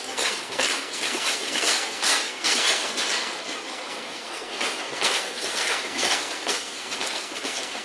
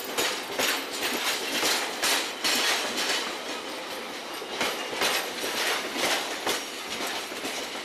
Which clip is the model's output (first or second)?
first